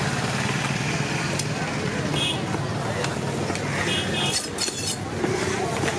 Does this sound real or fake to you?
real